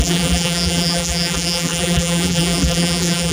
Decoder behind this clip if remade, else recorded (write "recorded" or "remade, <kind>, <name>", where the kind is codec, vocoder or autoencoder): remade, vocoder, BigVGAN v2